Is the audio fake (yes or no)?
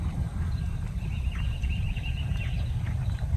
yes